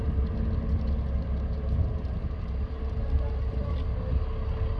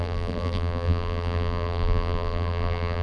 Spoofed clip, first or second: second